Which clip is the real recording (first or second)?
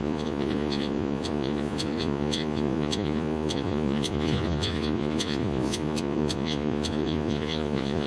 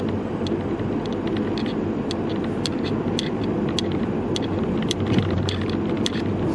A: second